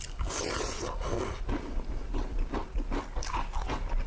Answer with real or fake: real